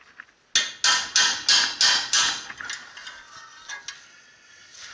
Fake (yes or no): no